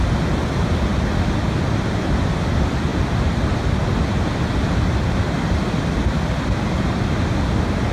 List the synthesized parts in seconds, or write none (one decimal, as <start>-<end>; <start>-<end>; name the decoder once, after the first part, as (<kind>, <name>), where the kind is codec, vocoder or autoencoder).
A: none